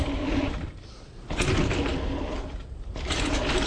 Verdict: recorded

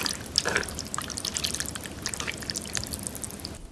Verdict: recorded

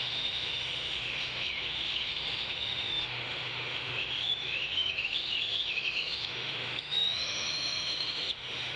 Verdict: remade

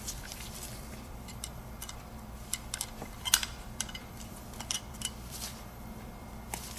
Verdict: remade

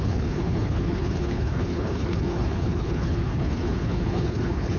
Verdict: remade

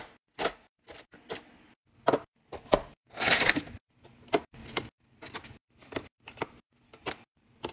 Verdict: recorded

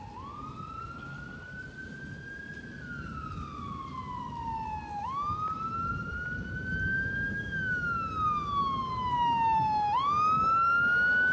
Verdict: recorded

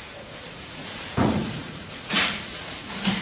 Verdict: remade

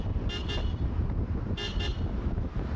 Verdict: recorded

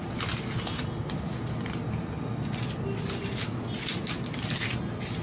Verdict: recorded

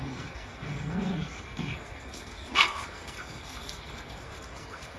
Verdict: remade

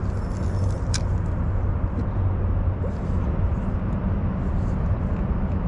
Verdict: recorded